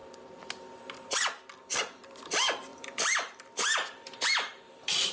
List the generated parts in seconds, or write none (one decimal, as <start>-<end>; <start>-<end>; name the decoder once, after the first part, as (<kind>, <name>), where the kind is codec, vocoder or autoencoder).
2.7-5.1 (vocoder, BigVGAN v2)